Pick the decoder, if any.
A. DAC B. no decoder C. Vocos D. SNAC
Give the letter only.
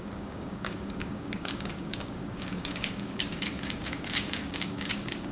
A